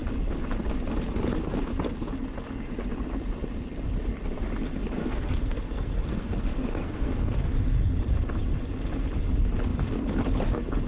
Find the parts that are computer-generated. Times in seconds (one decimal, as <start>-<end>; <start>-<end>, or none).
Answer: 5.0-7.5